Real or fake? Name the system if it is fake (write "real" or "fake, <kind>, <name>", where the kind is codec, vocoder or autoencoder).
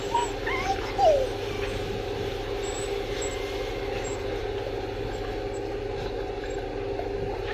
real